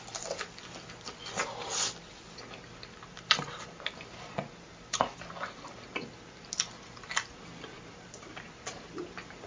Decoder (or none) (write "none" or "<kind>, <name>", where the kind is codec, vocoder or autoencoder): vocoder, BigVGAN v2